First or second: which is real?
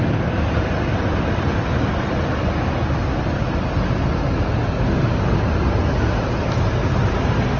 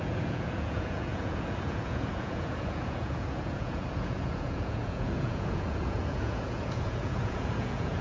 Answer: first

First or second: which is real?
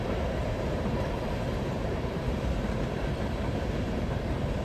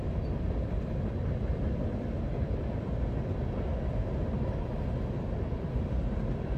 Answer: second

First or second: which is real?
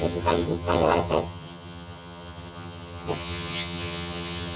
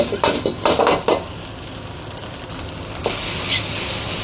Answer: second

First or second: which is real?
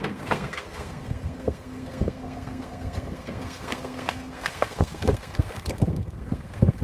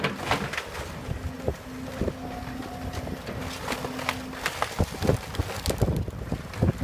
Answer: second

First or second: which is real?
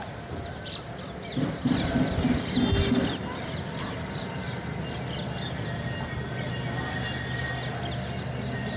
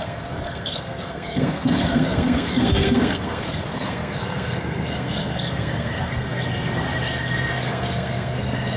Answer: first